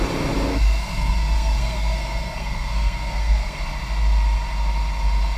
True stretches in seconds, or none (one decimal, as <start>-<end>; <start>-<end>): 0.0-0.5; 3.6-5.4